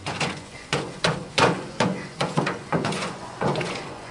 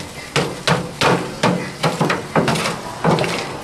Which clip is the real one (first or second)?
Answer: second